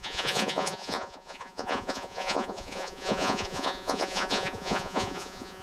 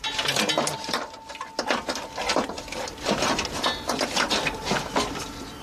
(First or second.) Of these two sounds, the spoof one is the first